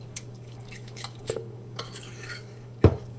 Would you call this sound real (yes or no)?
no